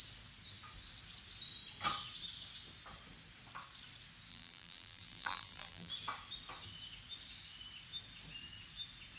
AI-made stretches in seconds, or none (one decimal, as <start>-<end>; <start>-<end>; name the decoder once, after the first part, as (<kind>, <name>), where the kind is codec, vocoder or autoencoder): 4.3-5.9 (vocoder, BigVGAN v2)